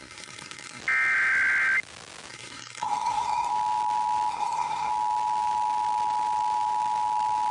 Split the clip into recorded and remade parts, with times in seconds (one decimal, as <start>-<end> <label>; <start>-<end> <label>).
0.0-0.8 remade; 0.8-2.3 recorded; 2.3-3.5 remade; 3.5-4.3 recorded; 4.3-4.9 remade; 4.9-7.5 recorded